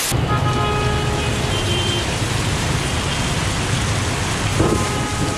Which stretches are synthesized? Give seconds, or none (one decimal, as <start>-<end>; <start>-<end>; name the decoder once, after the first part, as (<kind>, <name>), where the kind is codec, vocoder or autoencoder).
1.3-2.9 (vocoder, BigVGAN v2); 4.5-5.0